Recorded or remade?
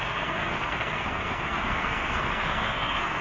remade